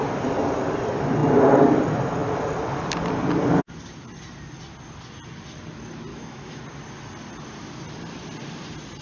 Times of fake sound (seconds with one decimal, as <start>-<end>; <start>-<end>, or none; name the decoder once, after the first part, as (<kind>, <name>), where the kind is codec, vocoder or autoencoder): 6.1-6.6 (autoencoder, DAC-VAE)

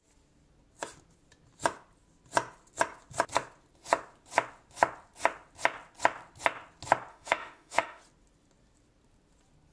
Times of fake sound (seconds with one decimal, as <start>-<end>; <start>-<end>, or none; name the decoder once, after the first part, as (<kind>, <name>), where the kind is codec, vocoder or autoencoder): 7.1-8.0 (autoencoder, DAC-VAE)

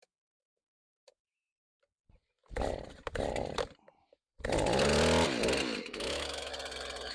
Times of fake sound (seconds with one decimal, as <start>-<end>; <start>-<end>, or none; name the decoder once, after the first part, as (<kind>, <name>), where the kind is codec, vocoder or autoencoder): 0.0-1.5 (autoencoder, DAC-VAE); 5.8-6.5